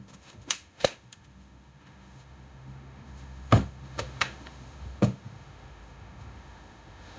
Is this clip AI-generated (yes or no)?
yes